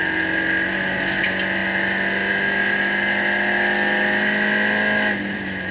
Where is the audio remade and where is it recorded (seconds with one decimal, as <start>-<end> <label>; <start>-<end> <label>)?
0.0-5.7 recorded